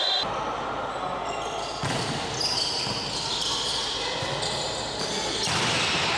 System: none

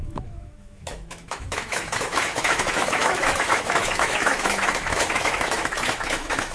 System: autoencoder, DAC-VAE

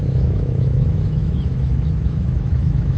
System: autoencoder, DAC-VAE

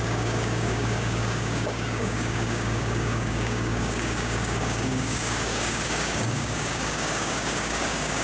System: codec, DAC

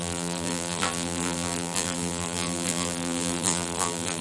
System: vocoder, BigVGAN v2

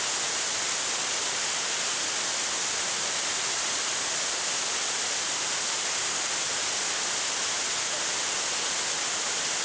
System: none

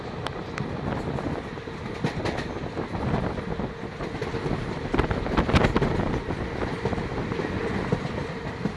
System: none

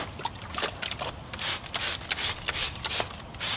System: none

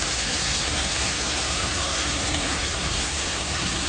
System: codec, SNAC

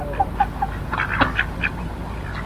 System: none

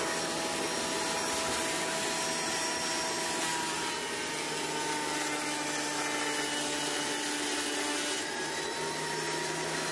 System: none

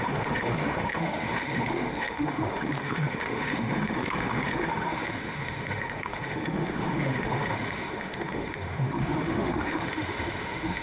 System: autoencoder, DAC-VAE